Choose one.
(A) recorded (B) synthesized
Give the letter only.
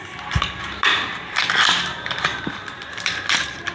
B